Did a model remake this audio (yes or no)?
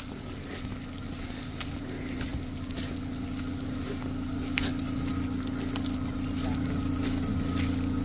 no